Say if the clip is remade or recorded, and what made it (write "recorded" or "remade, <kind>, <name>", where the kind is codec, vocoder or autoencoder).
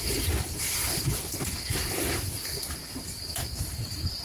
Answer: remade, vocoder, BigVGAN v2